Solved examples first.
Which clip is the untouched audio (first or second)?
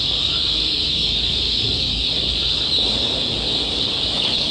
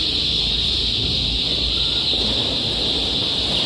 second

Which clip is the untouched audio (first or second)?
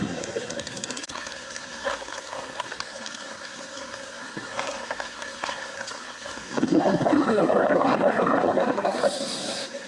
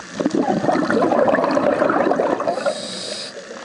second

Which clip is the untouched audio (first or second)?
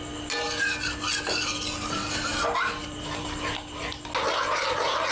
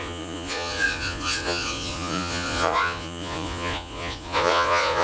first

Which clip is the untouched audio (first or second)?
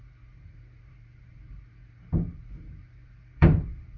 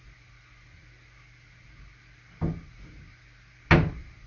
second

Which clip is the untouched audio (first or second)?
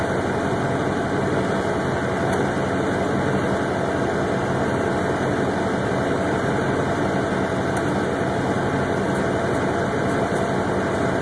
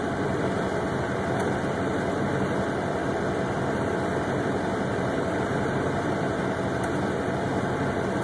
first